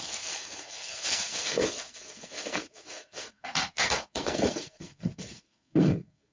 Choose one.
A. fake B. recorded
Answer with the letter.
A